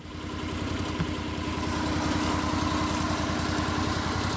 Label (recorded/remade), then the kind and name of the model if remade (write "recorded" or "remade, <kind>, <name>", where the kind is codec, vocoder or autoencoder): recorded